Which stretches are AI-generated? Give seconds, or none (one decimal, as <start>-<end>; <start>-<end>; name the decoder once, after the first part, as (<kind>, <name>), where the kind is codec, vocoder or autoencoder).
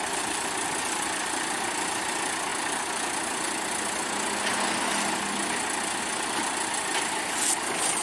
none